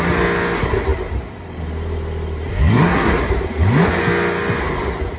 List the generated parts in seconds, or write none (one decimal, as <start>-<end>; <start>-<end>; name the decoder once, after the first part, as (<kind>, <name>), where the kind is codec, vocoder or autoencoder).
2.5-3.3 (codec, SNAC)